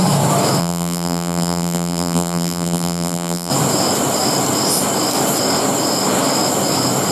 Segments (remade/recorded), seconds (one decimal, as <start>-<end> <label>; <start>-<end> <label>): 0.0-0.6 recorded; 0.6-3.5 remade; 3.5-7.1 recorded